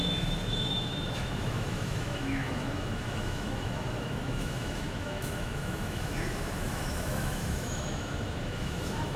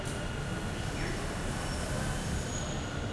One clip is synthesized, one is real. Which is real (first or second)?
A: second